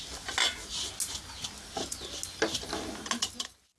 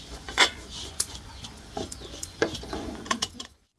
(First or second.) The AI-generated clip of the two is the second